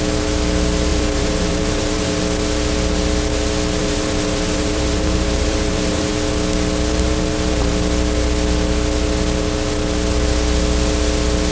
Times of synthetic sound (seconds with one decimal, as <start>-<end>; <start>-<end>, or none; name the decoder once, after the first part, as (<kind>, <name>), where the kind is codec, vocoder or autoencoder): 0.9-2.2 (vocoder, BigVGAN v2); 3.8-6.1